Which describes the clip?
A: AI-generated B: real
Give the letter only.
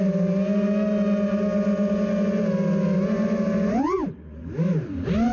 B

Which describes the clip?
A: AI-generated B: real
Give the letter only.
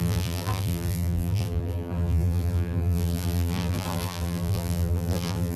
A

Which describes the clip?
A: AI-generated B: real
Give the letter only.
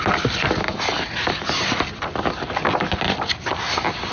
B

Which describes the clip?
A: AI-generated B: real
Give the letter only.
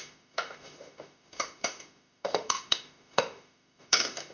A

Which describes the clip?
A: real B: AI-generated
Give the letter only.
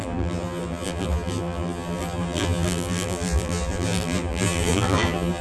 B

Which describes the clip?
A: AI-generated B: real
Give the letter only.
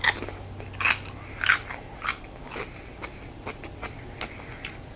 B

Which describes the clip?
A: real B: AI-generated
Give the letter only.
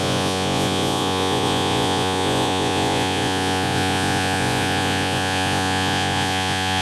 B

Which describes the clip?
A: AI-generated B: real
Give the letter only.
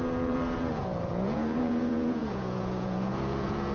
A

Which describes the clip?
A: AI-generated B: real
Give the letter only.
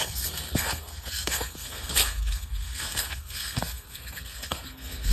A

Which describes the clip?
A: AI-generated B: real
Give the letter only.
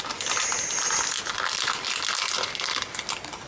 B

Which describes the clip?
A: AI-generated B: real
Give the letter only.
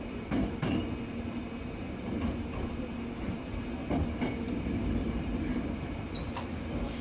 A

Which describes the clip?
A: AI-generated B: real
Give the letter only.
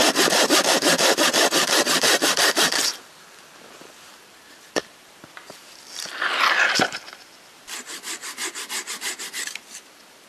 A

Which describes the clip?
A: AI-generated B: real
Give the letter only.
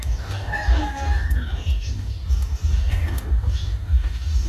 A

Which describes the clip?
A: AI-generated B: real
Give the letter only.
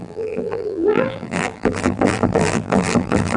A